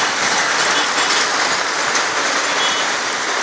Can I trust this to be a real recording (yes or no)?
yes